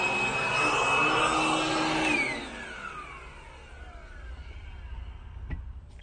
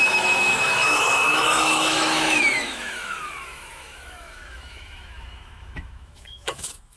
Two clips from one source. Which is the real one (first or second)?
first